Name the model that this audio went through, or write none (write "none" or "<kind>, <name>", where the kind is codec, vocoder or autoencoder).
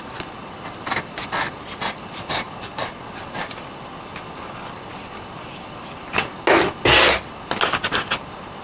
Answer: none